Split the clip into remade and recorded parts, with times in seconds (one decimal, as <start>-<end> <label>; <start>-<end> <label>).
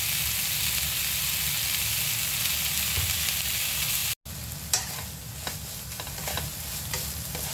0.0-7.5 recorded